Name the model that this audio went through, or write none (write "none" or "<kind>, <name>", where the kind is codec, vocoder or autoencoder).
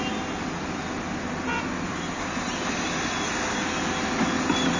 none